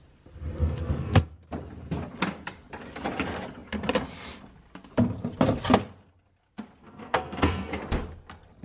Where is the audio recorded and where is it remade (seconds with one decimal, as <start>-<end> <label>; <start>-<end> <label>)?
0.0-0.6 recorded; 0.6-1.4 remade; 1.4-6.8 recorded; 6.8-7.7 remade; 7.7-8.6 recorded